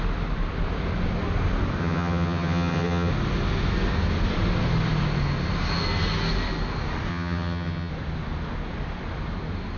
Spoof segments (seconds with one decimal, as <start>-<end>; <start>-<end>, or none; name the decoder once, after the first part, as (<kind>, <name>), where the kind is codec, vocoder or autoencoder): 1.8-3.1 (vocoder, HiFi-GAN); 7.1-7.9